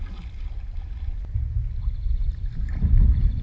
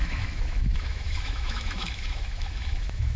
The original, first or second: first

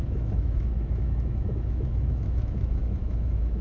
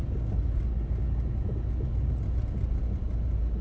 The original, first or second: second